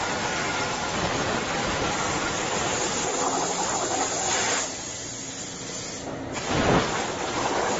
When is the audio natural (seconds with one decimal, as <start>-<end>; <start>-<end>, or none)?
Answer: 0.0-1.6; 3.4-7.8